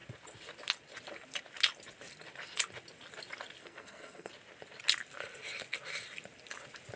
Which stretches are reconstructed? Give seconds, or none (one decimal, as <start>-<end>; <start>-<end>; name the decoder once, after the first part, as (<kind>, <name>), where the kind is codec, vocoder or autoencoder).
3.6-4.3 (codec, SNAC)